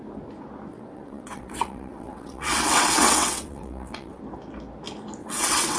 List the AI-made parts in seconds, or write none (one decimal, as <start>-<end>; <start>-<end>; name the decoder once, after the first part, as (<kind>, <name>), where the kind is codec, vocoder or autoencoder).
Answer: 0.7-4.2 (vocoder, WaveNeXt); 5.2-5.8